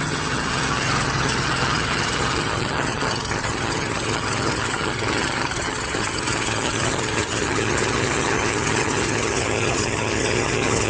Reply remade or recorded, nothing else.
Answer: remade